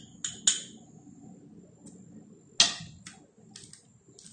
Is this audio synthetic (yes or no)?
no